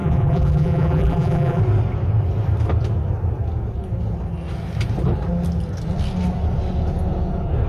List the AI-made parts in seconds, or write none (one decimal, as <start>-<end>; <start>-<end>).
0.0-1.6